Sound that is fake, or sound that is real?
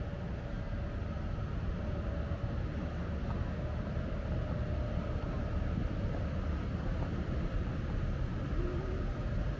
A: real